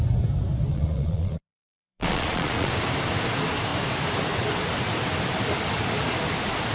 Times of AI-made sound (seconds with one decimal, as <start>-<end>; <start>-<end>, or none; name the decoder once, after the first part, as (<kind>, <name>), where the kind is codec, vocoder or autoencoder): 0.7-2.7 (vocoder, Vocos)